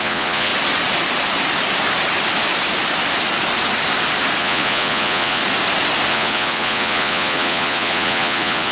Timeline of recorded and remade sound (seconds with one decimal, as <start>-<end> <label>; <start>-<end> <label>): 0.0-0.5 remade; 0.5-4.4 recorded; 4.4-5.4 remade; 5.4-6.1 recorded; 6.1-8.7 remade